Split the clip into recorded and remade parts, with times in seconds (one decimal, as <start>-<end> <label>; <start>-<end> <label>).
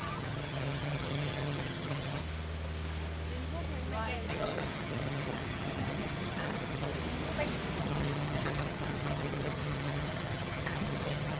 0.0-2.2 remade; 2.2-4.3 recorded; 4.3-6.9 remade; 6.9-7.8 recorded; 7.8-11.4 remade